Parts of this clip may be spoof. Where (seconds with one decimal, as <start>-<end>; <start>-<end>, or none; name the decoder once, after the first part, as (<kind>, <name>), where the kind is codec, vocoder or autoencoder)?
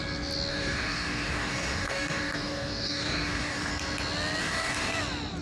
0.5-3.7 (codec, DAC); 4.4-4.9